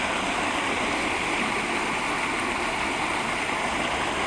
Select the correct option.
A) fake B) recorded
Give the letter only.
B